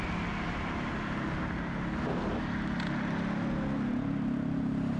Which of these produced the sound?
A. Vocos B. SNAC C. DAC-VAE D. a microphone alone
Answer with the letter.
D